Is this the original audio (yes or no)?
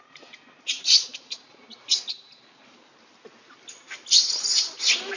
yes